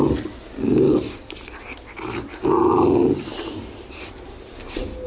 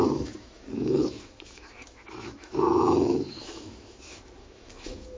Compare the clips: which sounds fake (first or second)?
second